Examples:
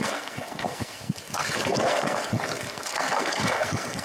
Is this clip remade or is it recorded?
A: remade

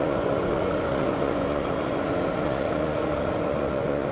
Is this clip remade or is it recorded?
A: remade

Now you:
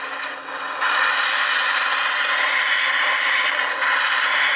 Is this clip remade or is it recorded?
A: recorded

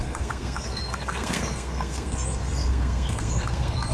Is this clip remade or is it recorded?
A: remade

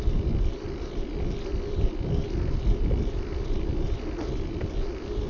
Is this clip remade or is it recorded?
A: recorded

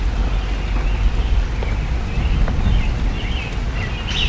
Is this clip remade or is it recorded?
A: recorded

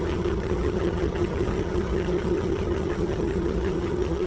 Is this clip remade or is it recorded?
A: remade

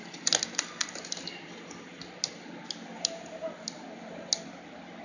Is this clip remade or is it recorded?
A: recorded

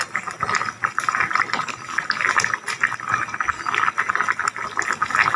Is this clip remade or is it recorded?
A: recorded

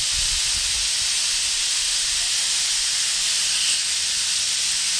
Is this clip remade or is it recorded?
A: recorded